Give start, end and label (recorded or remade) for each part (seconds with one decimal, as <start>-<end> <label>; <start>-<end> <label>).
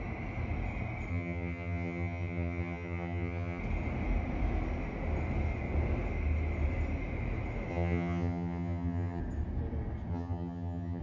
0.0-1.1 recorded; 1.1-3.6 remade; 3.6-7.7 recorded; 7.7-9.2 remade; 9.2-10.1 recorded; 10.1-11.0 remade